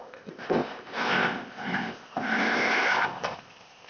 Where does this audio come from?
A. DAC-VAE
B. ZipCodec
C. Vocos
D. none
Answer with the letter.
B